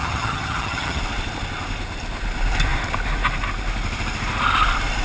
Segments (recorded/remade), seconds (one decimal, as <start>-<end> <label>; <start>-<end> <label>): 0.0-1.0 remade; 1.0-5.0 recorded